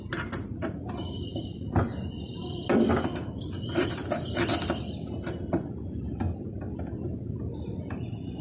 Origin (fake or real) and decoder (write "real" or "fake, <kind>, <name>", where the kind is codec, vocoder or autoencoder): real